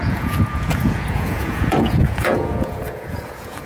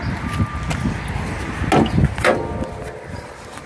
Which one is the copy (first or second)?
first